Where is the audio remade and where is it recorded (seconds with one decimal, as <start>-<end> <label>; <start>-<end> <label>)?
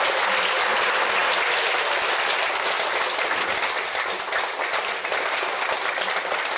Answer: 0.0-6.6 remade